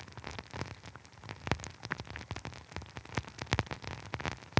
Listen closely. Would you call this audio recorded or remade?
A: recorded